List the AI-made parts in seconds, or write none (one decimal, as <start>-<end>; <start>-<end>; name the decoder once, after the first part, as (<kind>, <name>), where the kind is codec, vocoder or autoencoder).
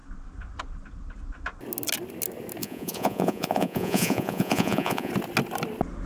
2.6-5.1 (vocoder, Vocos)